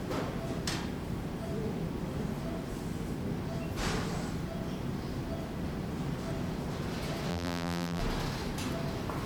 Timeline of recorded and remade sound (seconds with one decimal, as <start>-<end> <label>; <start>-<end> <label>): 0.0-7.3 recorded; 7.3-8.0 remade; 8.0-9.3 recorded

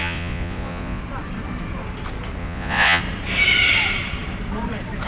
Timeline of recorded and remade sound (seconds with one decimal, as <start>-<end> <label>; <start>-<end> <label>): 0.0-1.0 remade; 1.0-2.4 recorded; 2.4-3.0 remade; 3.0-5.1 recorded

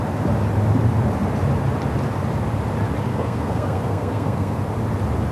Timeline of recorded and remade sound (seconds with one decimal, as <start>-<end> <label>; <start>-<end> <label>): 0.0-3.1 recorded; 3.1-4.6 remade; 4.6-5.3 recorded

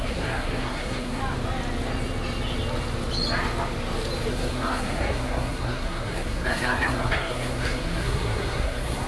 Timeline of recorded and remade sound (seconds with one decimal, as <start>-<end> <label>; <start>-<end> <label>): 0.0-1.2 remade; 1.2-4.3 recorded; 4.3-9.1 remade

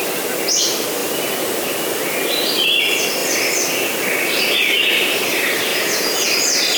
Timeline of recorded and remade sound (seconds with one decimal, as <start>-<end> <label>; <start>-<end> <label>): 0.0-5.7 recorded; 5.7-6.3 remade; 6.3-6.8 recorded